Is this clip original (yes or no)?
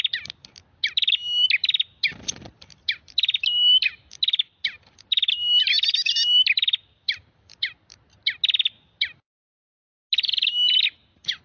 yes